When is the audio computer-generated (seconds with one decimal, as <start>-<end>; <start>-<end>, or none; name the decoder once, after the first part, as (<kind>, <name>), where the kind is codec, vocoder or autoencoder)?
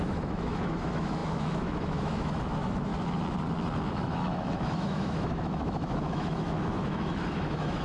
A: 0.0-2.9 (autoencoder, DAC-VAE); 3.9-7.8